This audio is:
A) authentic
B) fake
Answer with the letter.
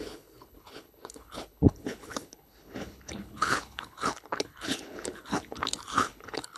B